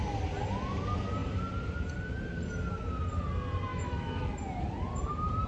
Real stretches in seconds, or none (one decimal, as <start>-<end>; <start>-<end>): 0.0-3.7; 4.3-5.5